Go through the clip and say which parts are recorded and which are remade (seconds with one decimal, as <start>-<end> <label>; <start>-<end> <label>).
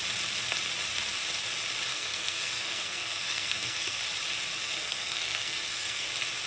0.0-1.9 recorded; 1.9-4.0 remade; 4.0-4.5 recorded; 4.5-6.1 remade; 6.1-6.5 recorded